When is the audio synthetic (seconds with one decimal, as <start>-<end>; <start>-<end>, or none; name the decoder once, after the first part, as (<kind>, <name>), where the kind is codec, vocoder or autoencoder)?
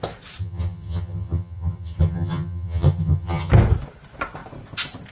0.4-3.5 (vocoder, HiFi-GAN)